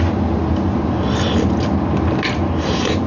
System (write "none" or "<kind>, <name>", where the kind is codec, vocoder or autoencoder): none